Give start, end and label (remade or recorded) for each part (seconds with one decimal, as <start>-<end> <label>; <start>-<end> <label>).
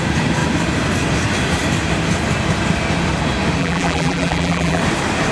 0.0-3.6 recorded; 3.6-4.8 remade; 4.8-5.3 recorded